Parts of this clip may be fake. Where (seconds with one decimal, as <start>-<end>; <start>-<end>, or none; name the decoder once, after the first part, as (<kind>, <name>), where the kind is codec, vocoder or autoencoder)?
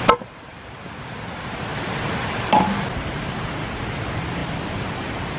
none